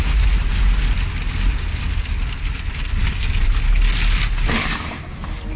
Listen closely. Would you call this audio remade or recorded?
recorded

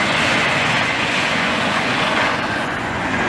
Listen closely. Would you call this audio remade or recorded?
remade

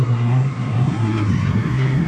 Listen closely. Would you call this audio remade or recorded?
remade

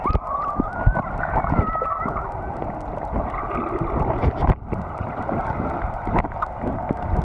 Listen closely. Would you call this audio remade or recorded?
remade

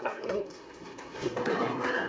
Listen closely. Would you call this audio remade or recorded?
remade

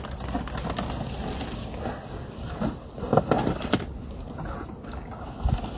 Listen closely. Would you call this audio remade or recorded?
recorded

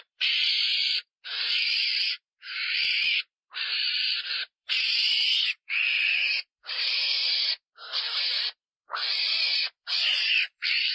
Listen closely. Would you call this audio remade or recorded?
remade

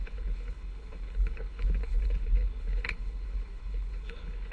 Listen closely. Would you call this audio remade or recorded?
remade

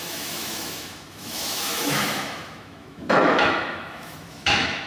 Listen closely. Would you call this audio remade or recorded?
remade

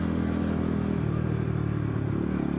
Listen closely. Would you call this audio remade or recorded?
recorded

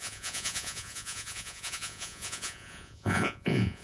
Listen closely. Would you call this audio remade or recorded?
remade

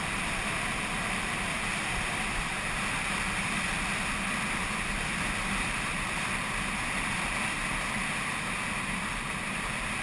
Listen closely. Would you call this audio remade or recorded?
recorded